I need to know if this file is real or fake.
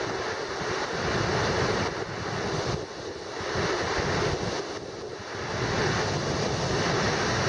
real